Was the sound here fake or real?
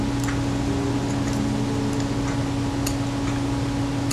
real